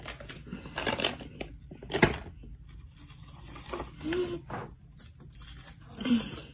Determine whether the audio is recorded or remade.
recorded